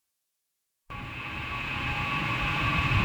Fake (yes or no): yes